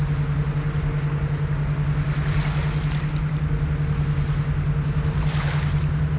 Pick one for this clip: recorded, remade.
recorded